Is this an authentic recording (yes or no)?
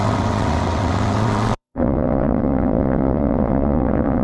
no